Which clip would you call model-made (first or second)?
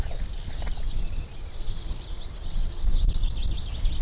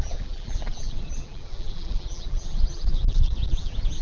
second